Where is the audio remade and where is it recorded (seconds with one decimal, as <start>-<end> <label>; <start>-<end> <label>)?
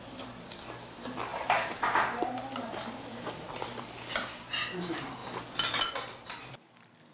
0.0-1.3 recorded; 1.3-3.5 remade; 3.5-7.1 recorded